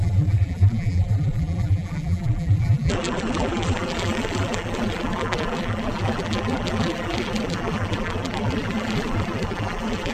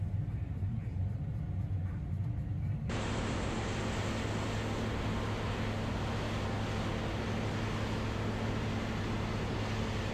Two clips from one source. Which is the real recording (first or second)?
second